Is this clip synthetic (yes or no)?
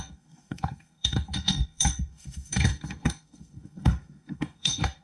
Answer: yes